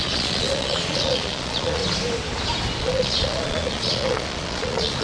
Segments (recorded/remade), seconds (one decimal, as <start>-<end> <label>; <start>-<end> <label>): 0.0-1.8 remade; 1.8-2.8 recorded; 2.8-5.0 remade